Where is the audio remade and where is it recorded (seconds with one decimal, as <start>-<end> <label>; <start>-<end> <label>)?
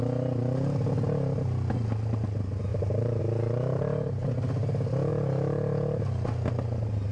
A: 0.0-2.7 recorded; 2.7-3.2 remade; 3.2-7.1 recorded